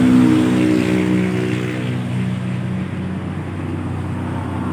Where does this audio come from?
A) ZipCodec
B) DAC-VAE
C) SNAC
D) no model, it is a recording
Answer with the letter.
D